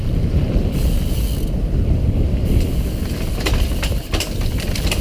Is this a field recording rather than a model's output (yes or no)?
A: yes